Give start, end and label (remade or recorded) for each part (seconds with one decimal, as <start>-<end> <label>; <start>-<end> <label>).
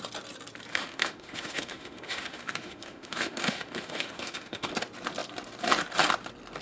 0.0-0.7 recorded; 0.7-4.7 remade; 4.7-6.6 recorded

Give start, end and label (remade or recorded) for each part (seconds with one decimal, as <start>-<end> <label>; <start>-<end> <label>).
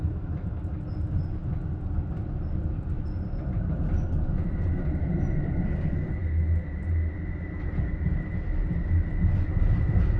0.0-10.2 recorded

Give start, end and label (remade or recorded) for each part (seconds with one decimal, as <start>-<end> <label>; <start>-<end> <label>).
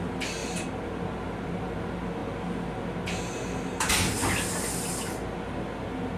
0.0-6.2 recorded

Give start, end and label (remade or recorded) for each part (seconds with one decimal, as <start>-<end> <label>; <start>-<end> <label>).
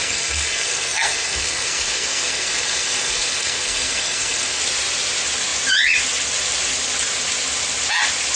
0.0-4.6 remade; 4.6-8.4 recorded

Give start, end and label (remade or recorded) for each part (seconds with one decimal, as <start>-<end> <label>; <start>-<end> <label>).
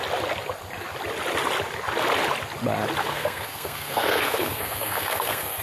0.0-3.0 recorded; 3.0-5.6 remade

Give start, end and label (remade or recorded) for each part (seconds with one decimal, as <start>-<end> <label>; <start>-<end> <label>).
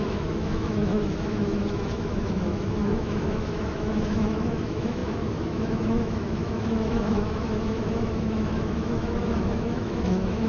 0.0-10.5 remade